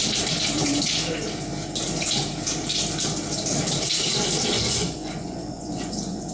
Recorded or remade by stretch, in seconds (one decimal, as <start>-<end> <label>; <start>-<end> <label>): 0.0-4.5 recorded; 4.5-6.3 remade

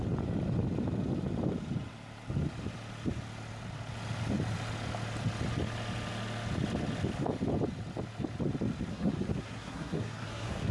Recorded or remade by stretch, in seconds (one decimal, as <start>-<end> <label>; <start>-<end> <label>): 0.0-8.9 recorded; 8.9-10.7 remade

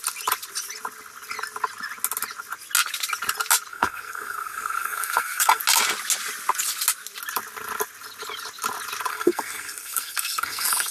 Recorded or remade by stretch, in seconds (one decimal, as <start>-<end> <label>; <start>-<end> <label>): 0.0-3.7 recorded; 3.7-5.6 remade; 5.6-9.1 recorded; 9.1-10.9 remade

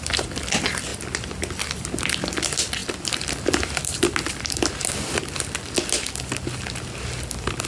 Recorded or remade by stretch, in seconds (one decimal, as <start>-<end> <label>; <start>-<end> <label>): 0.0-7.7 recorded

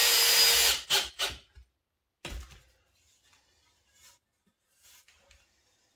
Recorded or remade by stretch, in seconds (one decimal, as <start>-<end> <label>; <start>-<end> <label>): 0.0-6.0 recorded